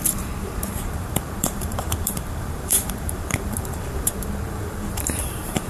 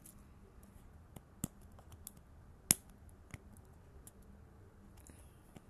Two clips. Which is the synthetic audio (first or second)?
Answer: first